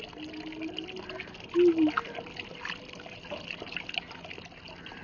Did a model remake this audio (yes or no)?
no